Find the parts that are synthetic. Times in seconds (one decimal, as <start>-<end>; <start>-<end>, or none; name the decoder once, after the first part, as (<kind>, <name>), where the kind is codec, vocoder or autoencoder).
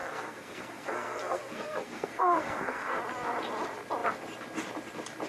0.0-3.0 (codec, SNAC)